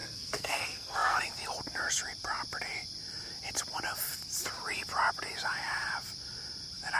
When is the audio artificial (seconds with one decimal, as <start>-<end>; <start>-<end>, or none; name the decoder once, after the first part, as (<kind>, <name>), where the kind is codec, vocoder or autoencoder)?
0.0-1.2 (codec, SNAC)